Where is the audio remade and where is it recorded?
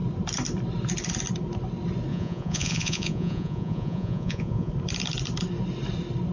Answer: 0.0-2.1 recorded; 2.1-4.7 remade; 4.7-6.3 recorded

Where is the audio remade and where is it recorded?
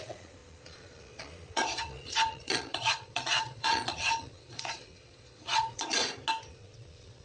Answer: 0.0-6.0 remade; 6.0-6.5 recorded; 6.5-7.2 remade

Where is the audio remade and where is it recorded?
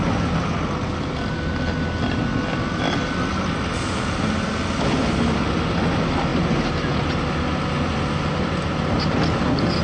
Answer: 0.0-9.8 recorded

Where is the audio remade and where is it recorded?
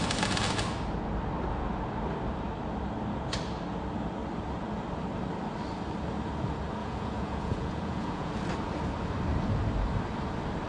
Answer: 0.0-6.8 recorded; 6.8-8.3 remade; 8.3-10.7 recorded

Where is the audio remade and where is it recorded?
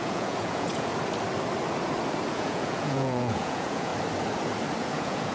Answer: 0.0-0.9 remade; 0.9-2.3 recorded; 2.3-3.9 remade; 3.9-4.8 recorded; 4.8-5.3 remade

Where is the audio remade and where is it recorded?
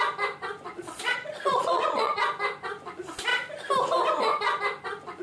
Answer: 0.0-0.7 recorded; 0.7-2.2 remade; 2.2-5.2 recorded